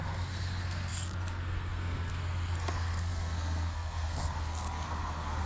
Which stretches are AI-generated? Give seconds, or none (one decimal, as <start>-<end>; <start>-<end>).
0.0-5.5